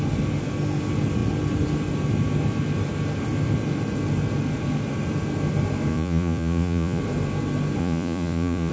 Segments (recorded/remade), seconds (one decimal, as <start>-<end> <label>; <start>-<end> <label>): 0.0-5.9 recorded; 5.9-7.0 remade; 7.0-7.8 recorded; 7.8-8.7 remade